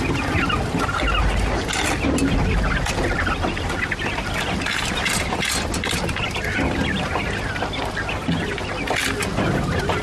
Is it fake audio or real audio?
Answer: real